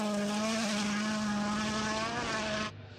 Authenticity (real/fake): real